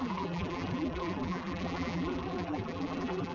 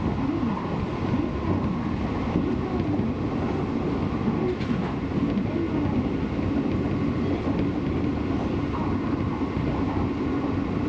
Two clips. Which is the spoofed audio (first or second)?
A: first